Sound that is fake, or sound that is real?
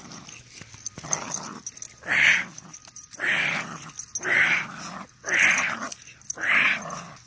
real